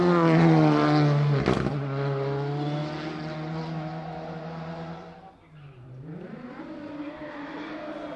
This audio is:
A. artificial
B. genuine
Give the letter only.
B